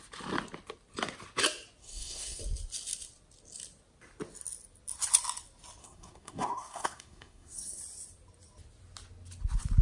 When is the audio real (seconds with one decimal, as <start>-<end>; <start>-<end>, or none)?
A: 0.0-1.8; 2.4-5.8; 7.8-9.8